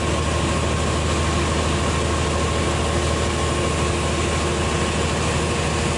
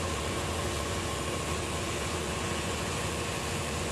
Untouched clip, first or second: first